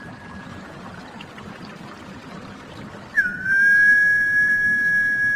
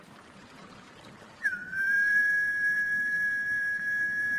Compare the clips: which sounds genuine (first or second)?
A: first